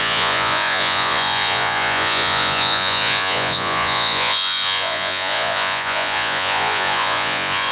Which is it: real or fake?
fake